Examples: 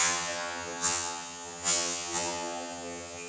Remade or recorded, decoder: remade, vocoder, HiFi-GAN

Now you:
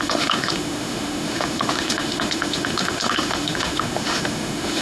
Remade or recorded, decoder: remade, autoencoder, DAC-VAE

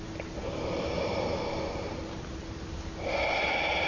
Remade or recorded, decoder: recorded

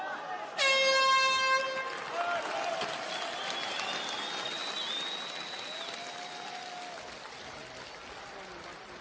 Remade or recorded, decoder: recorded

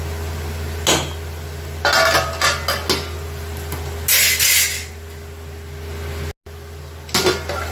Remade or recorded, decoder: recorded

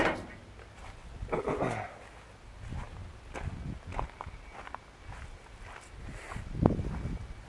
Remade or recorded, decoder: recorded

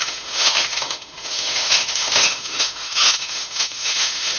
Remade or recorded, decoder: remade, autoencoder, DAC-VAE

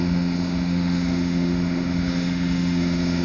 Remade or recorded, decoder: remade, autoencoder, DAC-VAE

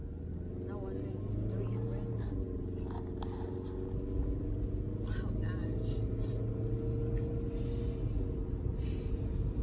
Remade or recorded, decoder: recorded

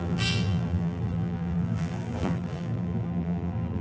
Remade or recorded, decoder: remade, vocoder, BigVGAN v2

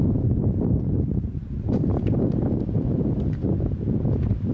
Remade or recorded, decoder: remade, vocoder, BigVGAN v2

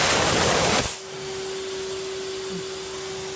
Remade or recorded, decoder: recorded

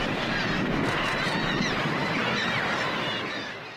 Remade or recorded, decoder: remade, vocoder, BigVGAN v2